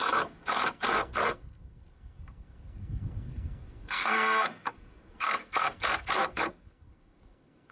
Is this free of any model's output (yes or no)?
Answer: no